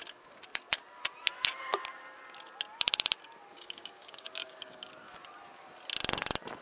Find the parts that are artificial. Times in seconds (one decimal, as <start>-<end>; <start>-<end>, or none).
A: 3.5-4.9